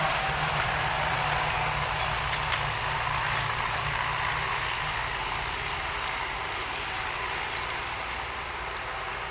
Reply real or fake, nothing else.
real